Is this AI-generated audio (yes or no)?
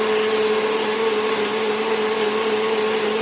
no